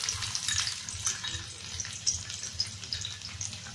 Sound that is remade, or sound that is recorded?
recorded